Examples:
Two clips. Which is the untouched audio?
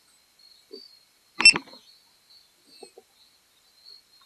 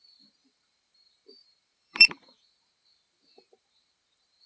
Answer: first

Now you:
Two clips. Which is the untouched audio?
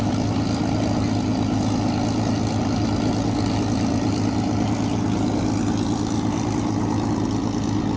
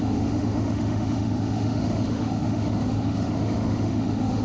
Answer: first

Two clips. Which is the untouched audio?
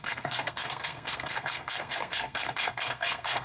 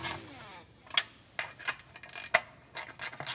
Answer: second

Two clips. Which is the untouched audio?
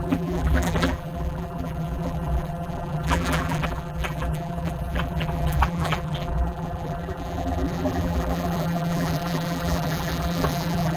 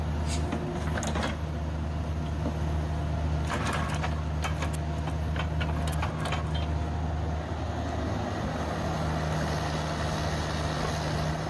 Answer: second